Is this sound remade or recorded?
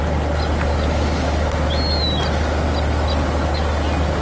recorded